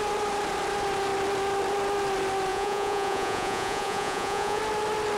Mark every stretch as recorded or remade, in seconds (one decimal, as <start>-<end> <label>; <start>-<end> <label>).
0.0-2.5 recorded; 2.5-4.6 remade; 4.6-5.2 recorded